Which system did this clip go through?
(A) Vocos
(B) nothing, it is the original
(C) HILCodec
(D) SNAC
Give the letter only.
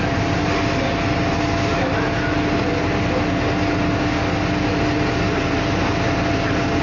B